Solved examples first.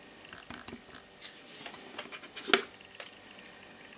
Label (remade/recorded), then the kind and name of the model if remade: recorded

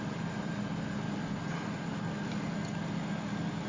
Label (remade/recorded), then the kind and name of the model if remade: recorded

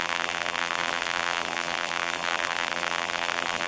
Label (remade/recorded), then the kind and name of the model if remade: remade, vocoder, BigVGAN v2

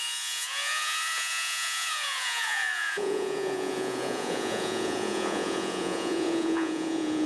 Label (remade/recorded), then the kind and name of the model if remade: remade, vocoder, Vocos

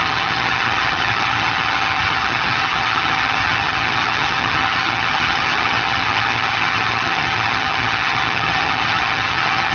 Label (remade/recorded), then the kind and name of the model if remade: remade, vocoder, HiFi-GAN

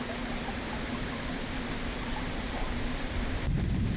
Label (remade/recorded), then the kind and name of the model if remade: recorded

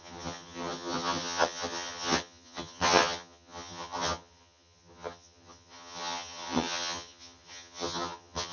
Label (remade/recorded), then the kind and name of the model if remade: remade, vocoder, HiFi-GAN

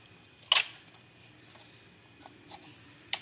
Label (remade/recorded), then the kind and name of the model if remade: recorded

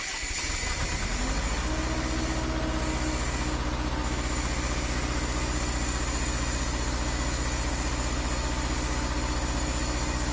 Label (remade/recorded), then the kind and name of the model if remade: recorded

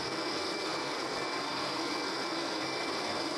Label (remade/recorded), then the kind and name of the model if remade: remade, codec, SNAC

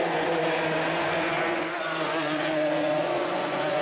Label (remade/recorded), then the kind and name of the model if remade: remade, vocoder, Vocos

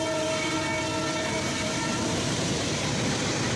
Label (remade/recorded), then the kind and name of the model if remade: remade, vocoder, BigVGAN v2